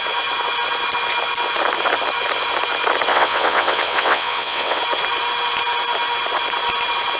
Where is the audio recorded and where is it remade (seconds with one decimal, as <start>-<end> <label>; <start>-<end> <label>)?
0.0-3.1 recorded; 3.1-4.8 remade; 4.8-7.2 recorded